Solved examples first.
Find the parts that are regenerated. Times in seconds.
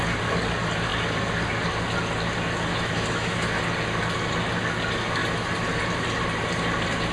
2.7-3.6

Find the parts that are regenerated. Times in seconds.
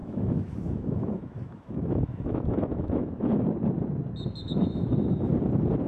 0.0-3.5; 4.4-5.3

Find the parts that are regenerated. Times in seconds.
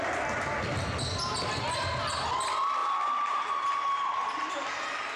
none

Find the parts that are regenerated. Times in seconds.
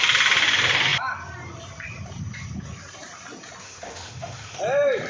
3.6-4.6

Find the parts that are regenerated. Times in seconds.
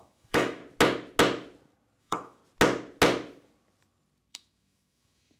0.0-0.6; 2.0-2.4; 4.3-5.4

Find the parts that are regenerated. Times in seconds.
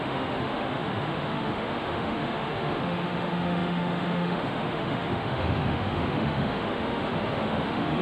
0.0-8.0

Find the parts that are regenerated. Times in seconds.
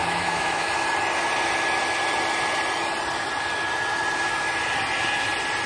0.0-0.7